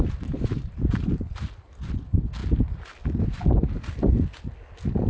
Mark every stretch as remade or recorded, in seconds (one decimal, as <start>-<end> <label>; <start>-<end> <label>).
0.0-5.1 recorded